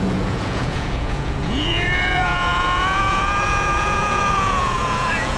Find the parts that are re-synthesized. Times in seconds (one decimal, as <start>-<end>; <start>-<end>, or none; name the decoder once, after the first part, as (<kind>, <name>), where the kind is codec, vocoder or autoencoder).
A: 0.0-5.4 (vocoder, Vocos)

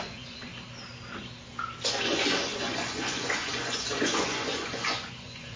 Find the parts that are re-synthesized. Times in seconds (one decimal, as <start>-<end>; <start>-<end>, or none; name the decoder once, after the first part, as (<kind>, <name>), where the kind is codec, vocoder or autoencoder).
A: 0.0-0.5 (vocoder, Vocos); 1.9-5.6

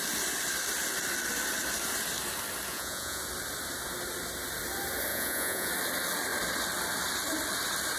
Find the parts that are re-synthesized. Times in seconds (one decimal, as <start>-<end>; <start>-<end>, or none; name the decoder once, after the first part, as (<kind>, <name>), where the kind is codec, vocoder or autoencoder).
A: 2.7-3.2 (vocoder, Vocos); 5.1-5.7

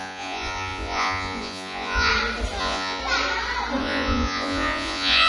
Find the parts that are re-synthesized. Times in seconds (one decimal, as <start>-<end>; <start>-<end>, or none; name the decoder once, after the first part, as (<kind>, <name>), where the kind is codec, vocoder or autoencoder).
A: 0.0-2.1 (vocoder, Vocos); 2.6-3.0; 3.8-5.3

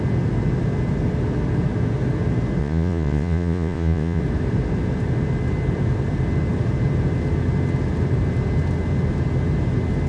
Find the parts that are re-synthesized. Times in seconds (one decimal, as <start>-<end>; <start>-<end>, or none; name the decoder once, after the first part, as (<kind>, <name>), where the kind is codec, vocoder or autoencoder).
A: 2.6-4.2 (vocoder, Vocos)

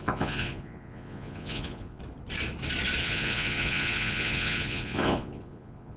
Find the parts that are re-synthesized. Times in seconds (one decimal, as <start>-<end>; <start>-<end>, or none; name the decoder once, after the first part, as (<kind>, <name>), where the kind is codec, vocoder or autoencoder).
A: 0.0-2.0 (vocoder, Vocos); 3.0-6.0